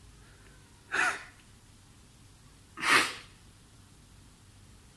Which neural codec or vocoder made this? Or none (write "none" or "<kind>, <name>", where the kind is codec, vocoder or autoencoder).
none